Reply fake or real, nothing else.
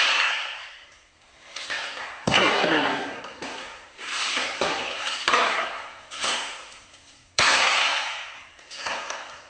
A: fake